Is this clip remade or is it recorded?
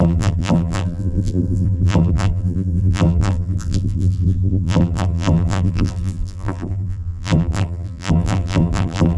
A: remade